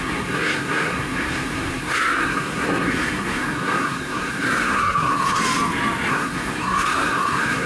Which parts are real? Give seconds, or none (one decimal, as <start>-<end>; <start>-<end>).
5.4-6.1